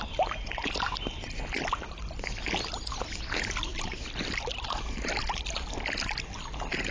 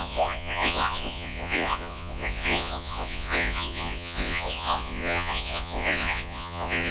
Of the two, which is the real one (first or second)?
first